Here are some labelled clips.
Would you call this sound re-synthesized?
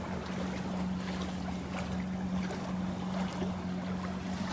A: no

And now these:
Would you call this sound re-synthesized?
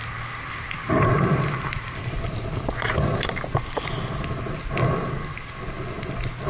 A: no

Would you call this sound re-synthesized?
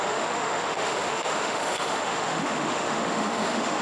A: yes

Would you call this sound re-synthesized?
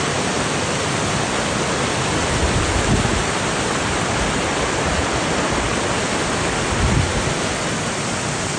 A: no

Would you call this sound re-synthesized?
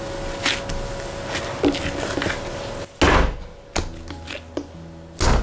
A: no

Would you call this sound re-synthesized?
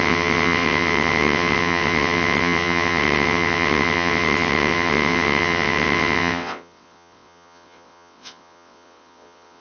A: yes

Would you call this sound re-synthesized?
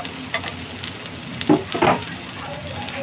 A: no